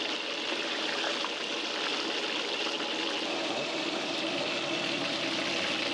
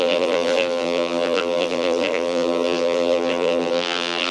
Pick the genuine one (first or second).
first